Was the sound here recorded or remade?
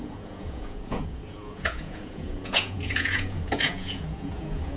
remade